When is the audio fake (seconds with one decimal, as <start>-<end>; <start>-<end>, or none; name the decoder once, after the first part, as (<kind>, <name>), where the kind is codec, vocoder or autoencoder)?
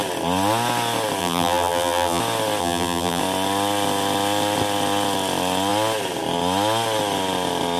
1.2-2.2 (vocoder, BigVGAN v2); 2.6-3.2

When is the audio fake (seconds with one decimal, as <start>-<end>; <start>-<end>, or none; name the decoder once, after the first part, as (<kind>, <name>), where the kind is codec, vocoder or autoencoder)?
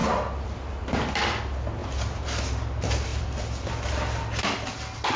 0.0-1.4 (vocoder, BigVGAN v2); 1.8-2.4; 3.1-3.7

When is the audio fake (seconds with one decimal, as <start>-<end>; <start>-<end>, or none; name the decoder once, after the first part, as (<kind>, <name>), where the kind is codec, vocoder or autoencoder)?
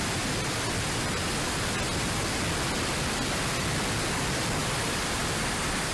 4.6-5.9 (vocoder, BigVGAN v2)